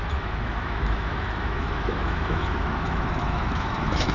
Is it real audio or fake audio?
fake